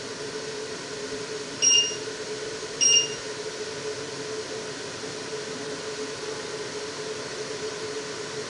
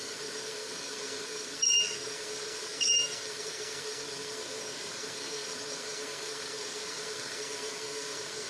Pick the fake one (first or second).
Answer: second